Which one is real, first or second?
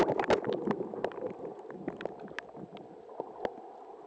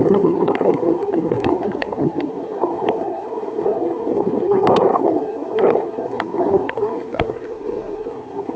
first